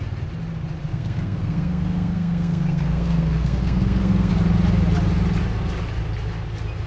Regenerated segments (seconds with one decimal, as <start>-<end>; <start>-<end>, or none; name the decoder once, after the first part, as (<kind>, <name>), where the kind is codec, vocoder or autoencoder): 0.9-4.3 (codec, SNAC)